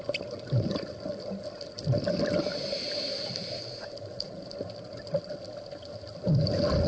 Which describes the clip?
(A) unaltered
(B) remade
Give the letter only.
A